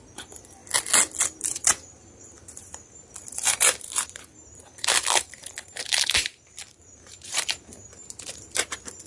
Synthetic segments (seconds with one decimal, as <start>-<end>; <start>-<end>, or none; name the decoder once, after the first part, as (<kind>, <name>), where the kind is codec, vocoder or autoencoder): 0.0-0.6 (vocoder, BigVGAN v2); 1.4-9.1